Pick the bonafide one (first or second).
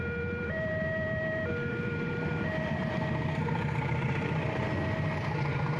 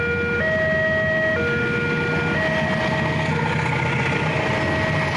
second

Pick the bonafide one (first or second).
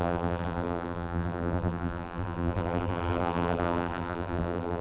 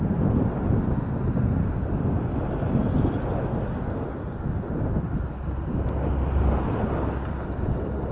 second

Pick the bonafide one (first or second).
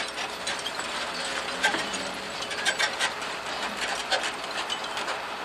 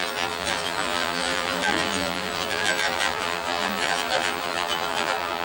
first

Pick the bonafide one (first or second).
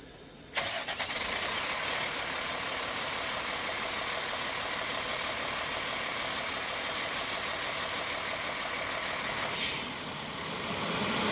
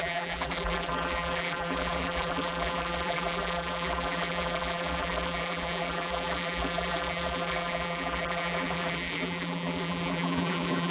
first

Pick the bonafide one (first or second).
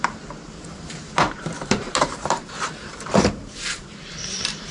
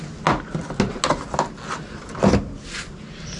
second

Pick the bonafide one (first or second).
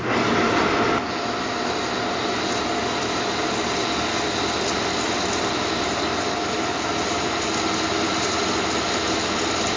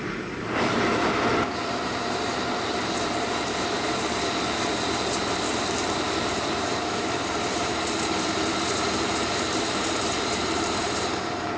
first